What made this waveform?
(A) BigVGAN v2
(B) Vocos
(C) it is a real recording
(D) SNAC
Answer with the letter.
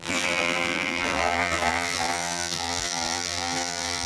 A